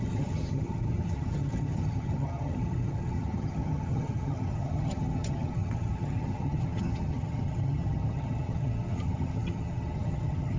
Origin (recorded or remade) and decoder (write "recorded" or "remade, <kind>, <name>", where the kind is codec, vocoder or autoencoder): remade, vocoder, HiFi-GAN